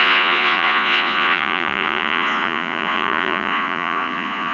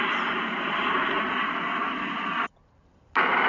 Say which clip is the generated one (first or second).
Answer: first